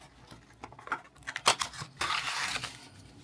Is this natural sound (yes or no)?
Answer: yes